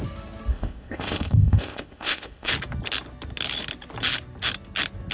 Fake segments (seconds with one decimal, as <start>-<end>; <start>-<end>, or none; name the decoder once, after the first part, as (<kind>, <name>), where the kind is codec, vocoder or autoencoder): 0.5-2.5 (codec, ZipCodec)

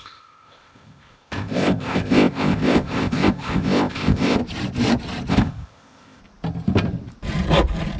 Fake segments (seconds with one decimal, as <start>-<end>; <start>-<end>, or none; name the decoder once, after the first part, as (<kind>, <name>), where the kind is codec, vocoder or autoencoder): 0.0-4.4 (codec, ZipCodec); 5.3-6.2